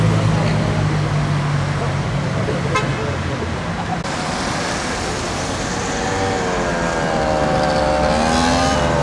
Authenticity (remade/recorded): recorded